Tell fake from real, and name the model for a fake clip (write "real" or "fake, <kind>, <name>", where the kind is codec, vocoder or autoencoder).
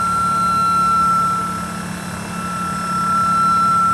real